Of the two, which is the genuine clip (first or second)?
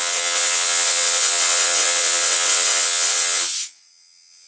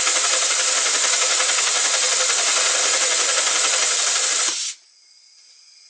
second